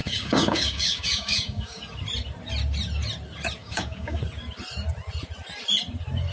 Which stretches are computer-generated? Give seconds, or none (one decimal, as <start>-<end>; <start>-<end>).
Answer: 0.0-1.8; 3.6-4.2